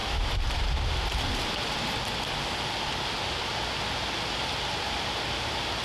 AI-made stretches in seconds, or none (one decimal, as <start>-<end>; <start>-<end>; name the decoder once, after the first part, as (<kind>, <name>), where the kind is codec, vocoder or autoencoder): none